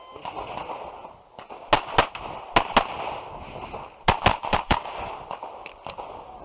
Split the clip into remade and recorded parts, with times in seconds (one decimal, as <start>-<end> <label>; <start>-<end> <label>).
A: 0.0-4.3 recorded; 4.3-5.1 remade; 5.1-6.4 recorded